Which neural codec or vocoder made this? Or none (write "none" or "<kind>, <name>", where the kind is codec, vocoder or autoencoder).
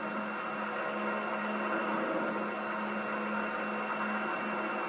none